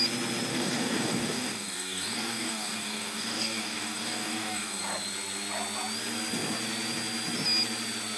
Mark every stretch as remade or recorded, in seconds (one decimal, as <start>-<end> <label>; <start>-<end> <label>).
0.0-0.5 recorded; 0.5-4.8 remade; 4.8-8.2 recorded